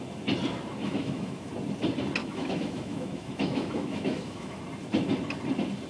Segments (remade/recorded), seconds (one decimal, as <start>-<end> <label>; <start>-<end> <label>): 0.0-0.8 recorded; 0.8-1.5 remade; 1.5-2.2 recorded; 2.2-4.6 remade; 4.6-5.9 recorded